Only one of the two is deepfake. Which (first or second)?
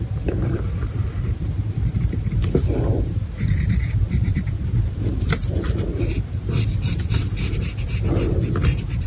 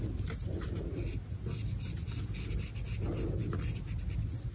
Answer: first